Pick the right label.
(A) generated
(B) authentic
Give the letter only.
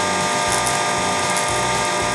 B